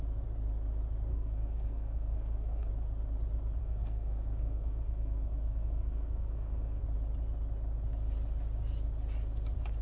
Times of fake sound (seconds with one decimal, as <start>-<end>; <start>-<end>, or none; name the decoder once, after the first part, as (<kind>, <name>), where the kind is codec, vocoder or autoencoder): 1.1-2.7 (codec, SNAC); 3.6-6.8